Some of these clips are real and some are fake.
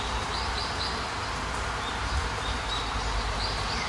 fake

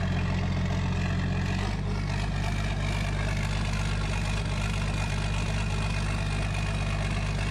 real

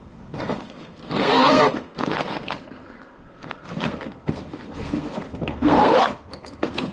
fake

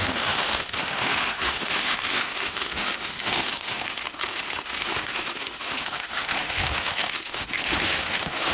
fake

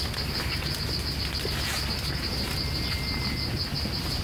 real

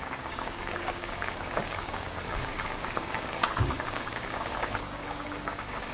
fake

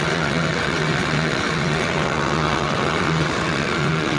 fake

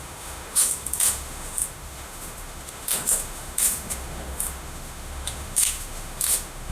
fake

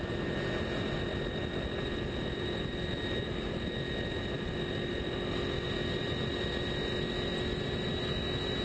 real